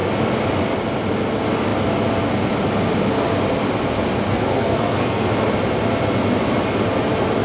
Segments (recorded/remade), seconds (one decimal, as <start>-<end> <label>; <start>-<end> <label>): 0.0-4.3 recorded; 4.3-5.3 remade; 5.3-7.4 recorded